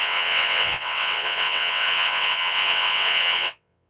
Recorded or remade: remade